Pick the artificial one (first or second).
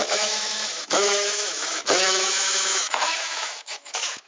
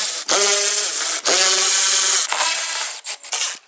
first